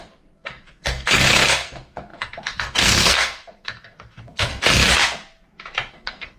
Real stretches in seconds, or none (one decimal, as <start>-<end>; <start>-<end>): 4.5-5.9